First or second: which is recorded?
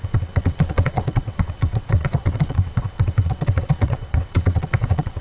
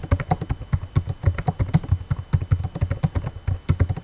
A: second